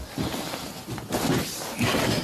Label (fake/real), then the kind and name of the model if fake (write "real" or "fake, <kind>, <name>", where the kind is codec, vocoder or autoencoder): real